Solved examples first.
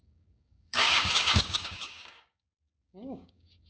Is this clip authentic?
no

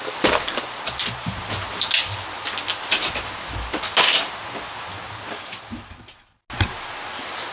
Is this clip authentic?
yes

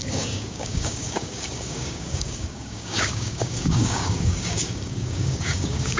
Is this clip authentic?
no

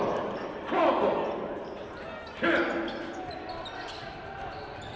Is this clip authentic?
yes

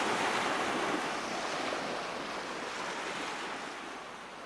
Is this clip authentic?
yes